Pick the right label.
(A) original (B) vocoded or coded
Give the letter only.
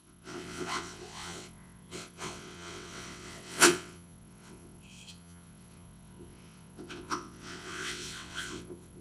B